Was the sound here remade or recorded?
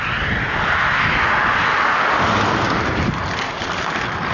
recorded